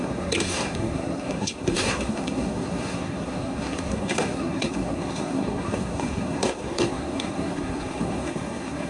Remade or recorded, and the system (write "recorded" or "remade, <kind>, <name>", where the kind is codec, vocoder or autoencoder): remade, codec, SNAC